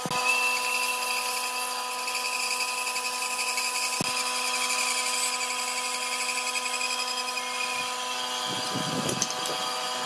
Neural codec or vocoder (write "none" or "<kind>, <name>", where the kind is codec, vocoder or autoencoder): none